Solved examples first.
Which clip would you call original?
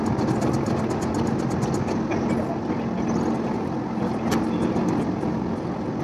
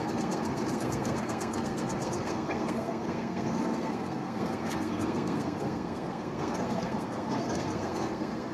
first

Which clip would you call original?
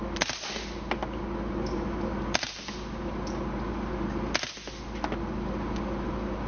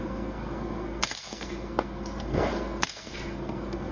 first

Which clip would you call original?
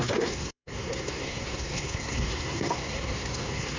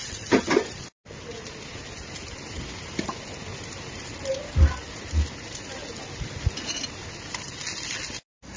second